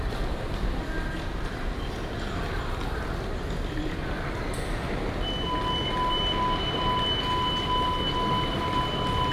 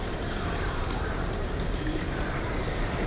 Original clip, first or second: first